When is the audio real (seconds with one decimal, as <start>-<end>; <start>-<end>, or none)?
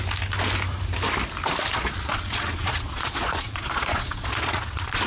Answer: 0.0-1.7